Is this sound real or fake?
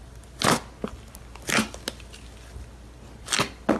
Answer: real